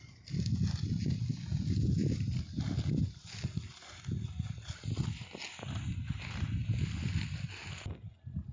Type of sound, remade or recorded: recorded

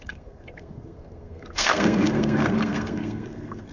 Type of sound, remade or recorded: remade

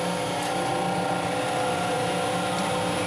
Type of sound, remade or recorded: recorded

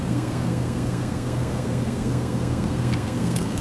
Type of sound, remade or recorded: remade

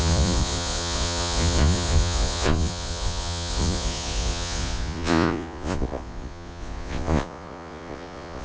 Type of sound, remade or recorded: remade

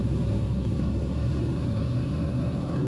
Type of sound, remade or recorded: remade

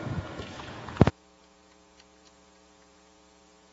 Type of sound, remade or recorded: remade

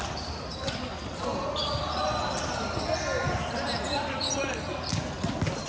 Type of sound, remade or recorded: recorded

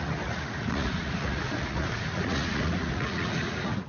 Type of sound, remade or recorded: remade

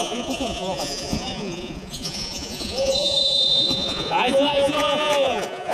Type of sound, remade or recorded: remade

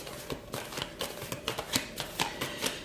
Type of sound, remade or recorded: recorded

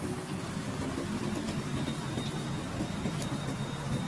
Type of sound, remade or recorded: recorded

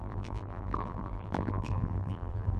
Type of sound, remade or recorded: remade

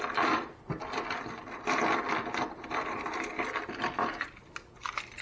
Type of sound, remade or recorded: recorded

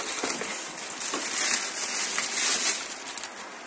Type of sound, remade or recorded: recorded